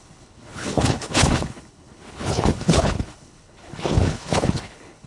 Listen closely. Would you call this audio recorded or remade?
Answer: remade